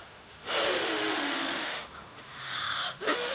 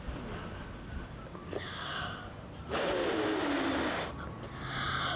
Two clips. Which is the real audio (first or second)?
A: second